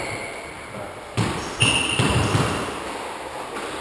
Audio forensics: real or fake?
real